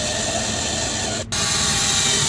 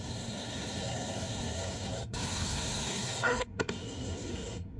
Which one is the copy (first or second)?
second